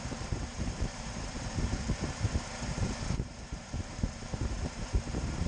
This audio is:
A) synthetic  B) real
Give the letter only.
A